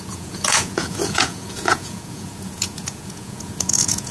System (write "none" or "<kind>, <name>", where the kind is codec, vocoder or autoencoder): vocoder, Vocos